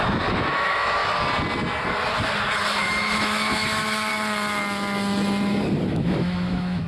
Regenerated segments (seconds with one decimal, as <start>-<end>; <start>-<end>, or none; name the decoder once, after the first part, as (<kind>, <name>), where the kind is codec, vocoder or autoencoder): 0.0-1.0 (autoencoder, DAC-VAE); 2.8-4.1; 5.9-6.9